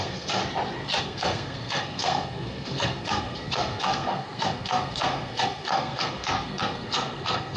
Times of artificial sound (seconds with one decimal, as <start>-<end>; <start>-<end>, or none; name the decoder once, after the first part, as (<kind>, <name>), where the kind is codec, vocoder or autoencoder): 0.0-0.4 (codec, SNAC); 1.0-7.6